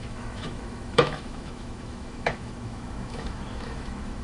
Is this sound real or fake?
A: fake